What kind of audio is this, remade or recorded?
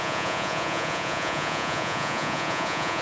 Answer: remade